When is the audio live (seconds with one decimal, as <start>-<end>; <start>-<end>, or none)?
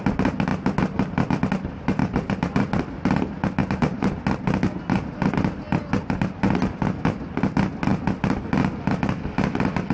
0.0-2.0; 2.7-3.6; 4.2-9.9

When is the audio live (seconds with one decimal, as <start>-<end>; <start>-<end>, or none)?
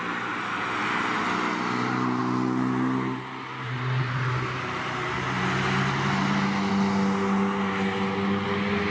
0.0-8.9